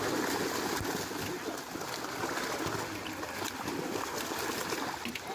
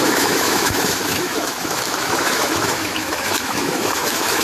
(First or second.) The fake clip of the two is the second